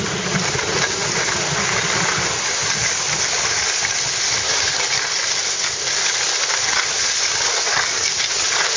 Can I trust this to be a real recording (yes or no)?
yes